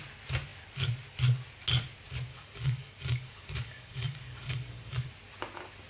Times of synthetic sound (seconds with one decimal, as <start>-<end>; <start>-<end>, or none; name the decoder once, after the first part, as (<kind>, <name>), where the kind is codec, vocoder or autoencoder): 2.3-5.1 (codec, DAC)